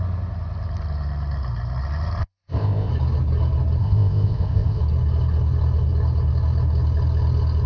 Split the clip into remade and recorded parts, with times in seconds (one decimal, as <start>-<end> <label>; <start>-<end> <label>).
0.0-2.2 recorded; 2.2-2.9 remade; 2.9-3.8 recorded; 3.8-4.8 remade; 4.8-7.7 recorded